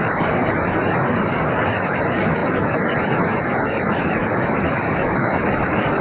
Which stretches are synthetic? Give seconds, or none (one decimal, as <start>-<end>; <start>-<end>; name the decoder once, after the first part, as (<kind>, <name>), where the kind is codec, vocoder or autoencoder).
0.0-6.0 (codec, DAC)